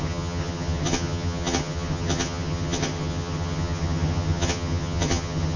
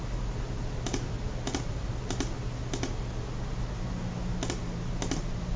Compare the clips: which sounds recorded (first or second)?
second